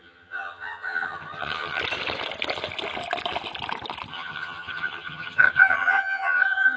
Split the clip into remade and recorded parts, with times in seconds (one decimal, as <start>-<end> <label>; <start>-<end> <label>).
0.0-1.8 remade; 1.8-4.1 recorded; 4.1-6.8 remade